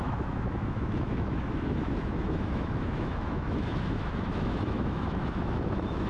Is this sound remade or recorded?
remade